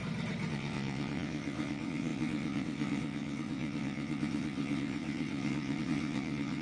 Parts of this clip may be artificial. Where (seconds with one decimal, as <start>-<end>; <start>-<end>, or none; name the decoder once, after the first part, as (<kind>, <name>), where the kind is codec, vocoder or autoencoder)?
0.5-6.6 (vocoder, WaveNeXt)